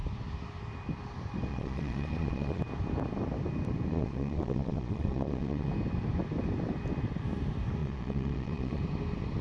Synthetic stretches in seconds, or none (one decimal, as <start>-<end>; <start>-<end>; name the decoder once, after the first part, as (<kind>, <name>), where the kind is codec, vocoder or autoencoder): 1.5-2.6 (vocoder, Vocos); 3.9-5.7; 7.8-8.8